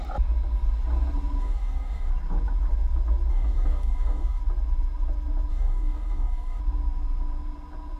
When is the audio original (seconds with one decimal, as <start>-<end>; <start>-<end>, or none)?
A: 0.0-1.4; 2.1-3.3; 4.4-5.5; 6.6-8.0